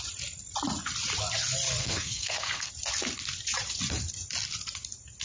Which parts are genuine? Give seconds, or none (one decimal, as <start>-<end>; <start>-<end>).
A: 0.0-1.8; 2.7-5.2